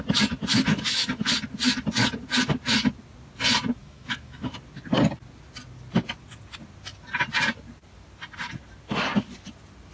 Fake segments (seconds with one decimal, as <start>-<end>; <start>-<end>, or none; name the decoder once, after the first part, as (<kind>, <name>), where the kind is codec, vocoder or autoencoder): 0.5-1.3 (autoencoder, DAC-VAE); 3.8-4.5